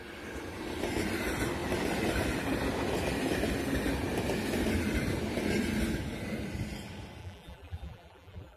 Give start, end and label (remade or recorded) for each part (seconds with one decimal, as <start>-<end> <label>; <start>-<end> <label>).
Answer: 0.0-7.2 recorded; 7.2-8.6 remade